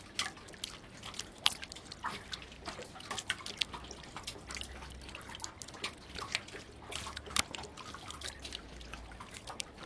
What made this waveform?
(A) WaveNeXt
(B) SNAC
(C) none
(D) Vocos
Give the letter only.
C